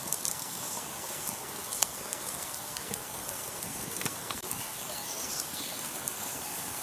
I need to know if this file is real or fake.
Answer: fake